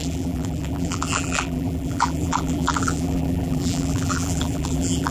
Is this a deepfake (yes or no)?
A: yes